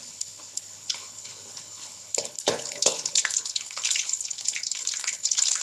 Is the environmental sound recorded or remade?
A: remade